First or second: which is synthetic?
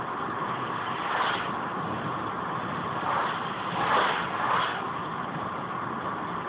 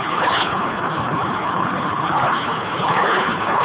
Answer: second